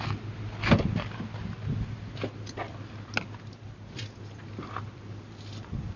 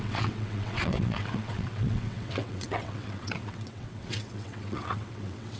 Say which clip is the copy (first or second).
second